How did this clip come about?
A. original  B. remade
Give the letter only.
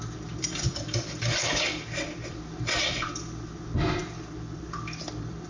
B